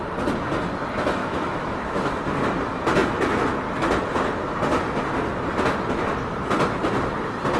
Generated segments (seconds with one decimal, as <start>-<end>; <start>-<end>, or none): 1.2-2.1